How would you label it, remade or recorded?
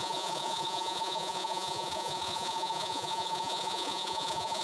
remade